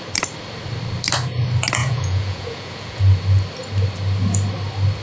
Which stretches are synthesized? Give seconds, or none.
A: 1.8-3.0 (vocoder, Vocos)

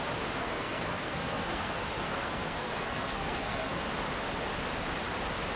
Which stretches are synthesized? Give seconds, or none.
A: 0.4-3.8 (codec, SNAC)

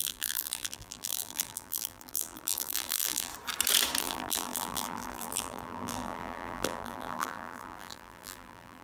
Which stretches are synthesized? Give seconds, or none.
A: 0.0-3.3 (vocoder, BigVGAN v2); 4.0-8.8

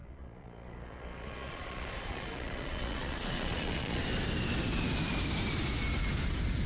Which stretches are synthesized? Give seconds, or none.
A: 0.0-4.0 (vocoder, Vocos)

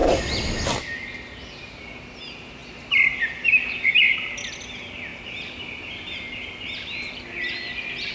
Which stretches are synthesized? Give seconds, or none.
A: none

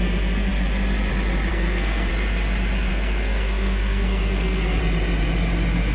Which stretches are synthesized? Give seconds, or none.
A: 1.5-2.1 (codec, SNAC); 2.9-4.8

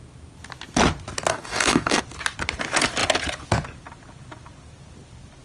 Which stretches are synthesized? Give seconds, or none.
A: 1.3-2.0 (codec, DAC)